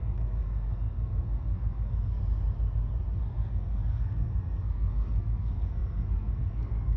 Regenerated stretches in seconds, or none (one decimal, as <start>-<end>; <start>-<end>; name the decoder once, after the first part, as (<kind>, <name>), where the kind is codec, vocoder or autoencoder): 0.0-2.2 (codec, SNAC); 3.2-7.0